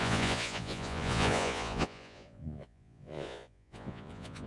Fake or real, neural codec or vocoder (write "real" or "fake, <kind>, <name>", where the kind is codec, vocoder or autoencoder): fake, vocoder, Vocos